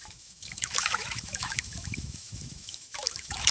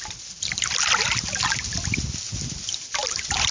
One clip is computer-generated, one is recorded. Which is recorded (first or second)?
second